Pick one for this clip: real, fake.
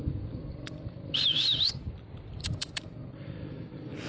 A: fake